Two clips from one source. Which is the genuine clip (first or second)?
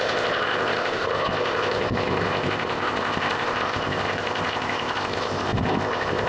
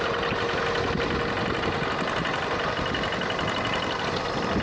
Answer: second